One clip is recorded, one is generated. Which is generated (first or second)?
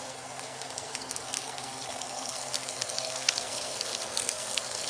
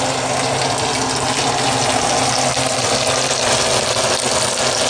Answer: first